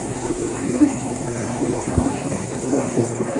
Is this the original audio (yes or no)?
no